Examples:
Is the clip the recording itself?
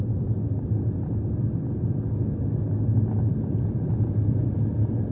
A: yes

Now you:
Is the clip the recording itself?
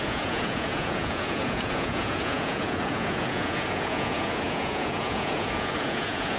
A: no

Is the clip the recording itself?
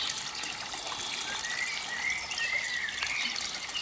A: yes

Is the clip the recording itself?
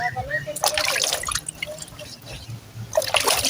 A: yes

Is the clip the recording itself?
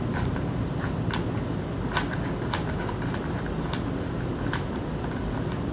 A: yes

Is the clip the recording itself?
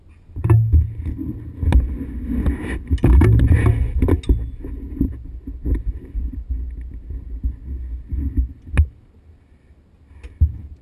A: yes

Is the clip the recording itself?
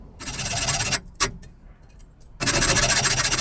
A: yes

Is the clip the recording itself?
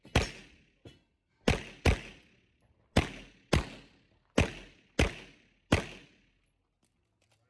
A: yes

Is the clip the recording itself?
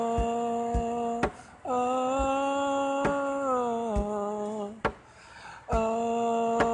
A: yes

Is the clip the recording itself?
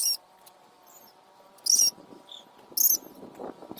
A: yes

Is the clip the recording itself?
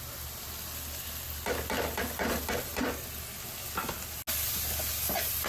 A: yes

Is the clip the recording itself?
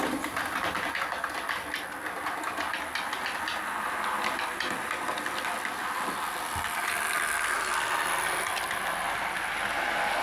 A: yes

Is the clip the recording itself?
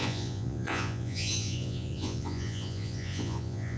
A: no